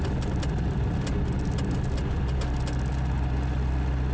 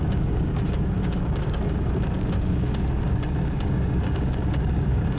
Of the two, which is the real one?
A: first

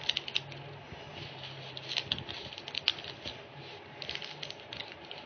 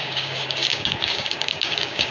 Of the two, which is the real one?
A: first